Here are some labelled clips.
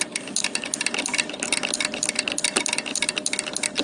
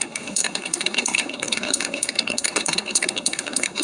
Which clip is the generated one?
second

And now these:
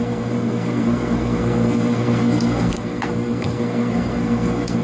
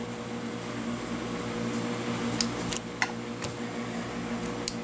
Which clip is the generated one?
first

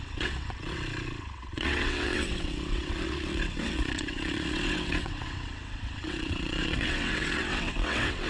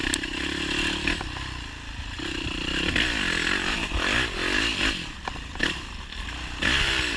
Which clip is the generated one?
first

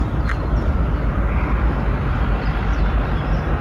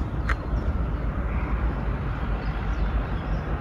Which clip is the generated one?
second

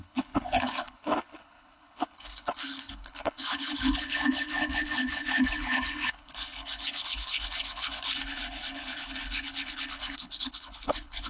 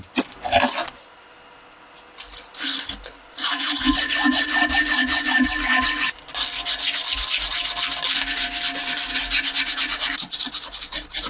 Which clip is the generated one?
first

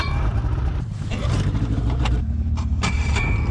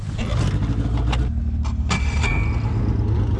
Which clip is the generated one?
first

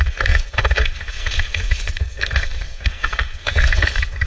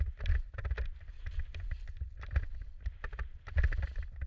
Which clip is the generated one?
first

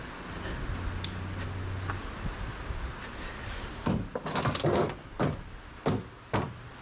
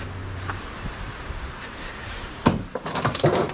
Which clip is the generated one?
second